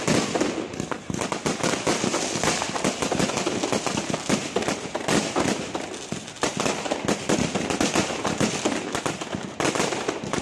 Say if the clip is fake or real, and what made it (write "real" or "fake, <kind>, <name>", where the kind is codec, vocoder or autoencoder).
real